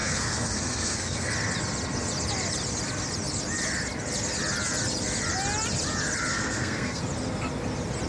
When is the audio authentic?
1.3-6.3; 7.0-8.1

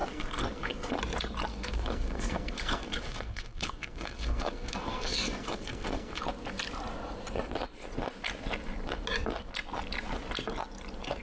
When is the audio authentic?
0.9-1.5; 6.2-11.2

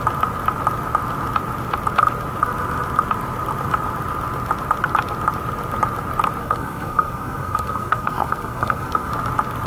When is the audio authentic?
0.0-6.4; 9.1-9.7

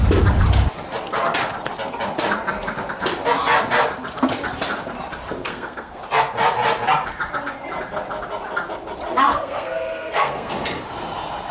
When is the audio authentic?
0.0-5.4; 6.0-9.3; 10.5-11.5

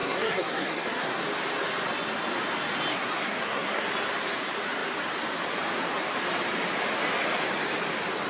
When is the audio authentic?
1.2-2.9; 3.9-8.3

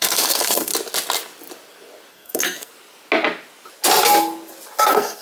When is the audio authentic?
0.7-2.1; 2.7-4.8

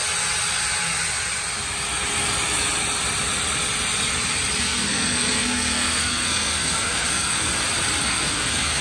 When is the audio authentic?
0.0-4.6; 7.5-8.0